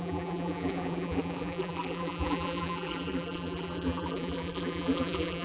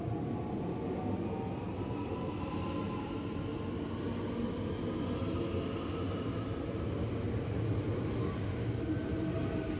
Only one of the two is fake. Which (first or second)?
first